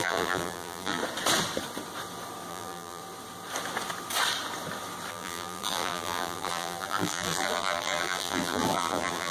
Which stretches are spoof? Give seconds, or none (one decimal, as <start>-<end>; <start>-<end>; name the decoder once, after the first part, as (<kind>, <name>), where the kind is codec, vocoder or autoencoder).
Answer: 0.0-1.0 (vocoder, BigVGAN v2); 2.5-3.0; 5.1-9.3

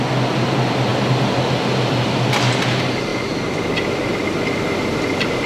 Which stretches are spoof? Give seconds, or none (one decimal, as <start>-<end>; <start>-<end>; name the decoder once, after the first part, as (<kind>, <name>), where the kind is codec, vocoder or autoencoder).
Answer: none

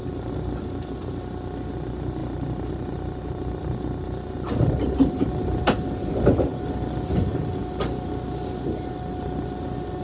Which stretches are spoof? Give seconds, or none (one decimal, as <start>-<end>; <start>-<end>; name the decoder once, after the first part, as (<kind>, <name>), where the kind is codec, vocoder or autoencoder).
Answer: 2.2-5.3 (vocoder, BigVGAN v2)

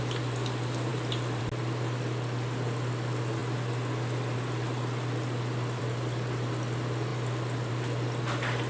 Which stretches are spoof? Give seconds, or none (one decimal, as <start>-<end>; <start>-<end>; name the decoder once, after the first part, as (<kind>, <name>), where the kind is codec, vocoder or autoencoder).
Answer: 0.9-1.4 (vocoder, BigVGAN v2)

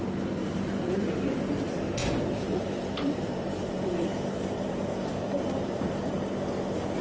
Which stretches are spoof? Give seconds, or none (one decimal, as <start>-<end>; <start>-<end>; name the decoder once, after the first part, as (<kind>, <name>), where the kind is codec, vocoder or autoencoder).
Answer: 0.4-1.2 (vocoder, BigVGAN v2); 2.0-6.2